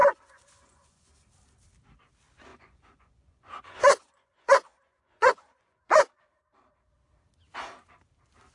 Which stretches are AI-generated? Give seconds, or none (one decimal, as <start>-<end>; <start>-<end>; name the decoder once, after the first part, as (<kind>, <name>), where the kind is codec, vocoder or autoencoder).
0.0-1.2 (vocoder, Vocos); 2.5-6.1